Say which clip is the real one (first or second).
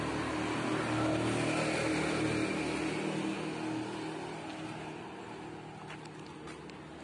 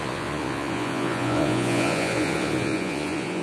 first